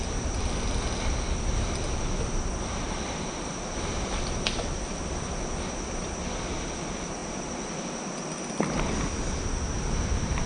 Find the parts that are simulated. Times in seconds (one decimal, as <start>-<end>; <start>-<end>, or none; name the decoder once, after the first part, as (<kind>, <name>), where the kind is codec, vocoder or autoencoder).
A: none